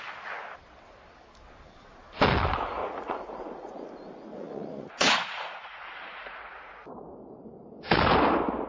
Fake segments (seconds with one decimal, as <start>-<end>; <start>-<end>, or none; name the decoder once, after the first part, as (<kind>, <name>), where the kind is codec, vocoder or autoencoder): 2.8-3.9 (vocoder, Vocos); 4.3-6.7

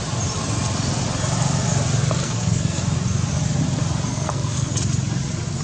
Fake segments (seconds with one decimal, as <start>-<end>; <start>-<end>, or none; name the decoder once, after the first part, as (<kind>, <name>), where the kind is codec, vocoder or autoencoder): 2.2-2.8 (codec, SNAC); 4.1-4.7

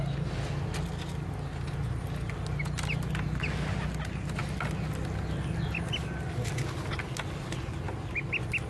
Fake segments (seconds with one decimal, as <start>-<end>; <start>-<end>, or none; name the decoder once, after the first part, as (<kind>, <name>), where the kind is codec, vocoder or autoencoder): none